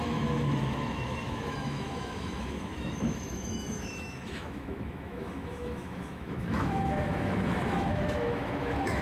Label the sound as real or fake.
fake